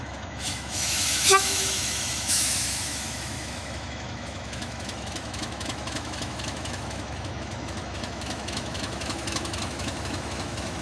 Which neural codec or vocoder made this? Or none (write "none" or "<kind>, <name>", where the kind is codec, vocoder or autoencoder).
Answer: autoencoder, DAC-VAE